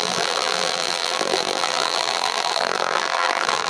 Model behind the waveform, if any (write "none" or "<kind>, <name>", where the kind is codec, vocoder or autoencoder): vocoder, BigVGAN v2